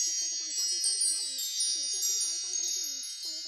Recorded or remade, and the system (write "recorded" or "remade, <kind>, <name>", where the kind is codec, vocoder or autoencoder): recorded